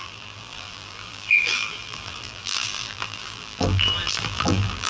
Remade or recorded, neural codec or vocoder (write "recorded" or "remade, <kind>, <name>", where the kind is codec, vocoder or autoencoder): remade, vocoder, BigVGAN v2